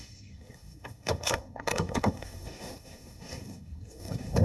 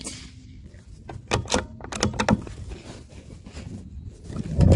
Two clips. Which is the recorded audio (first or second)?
second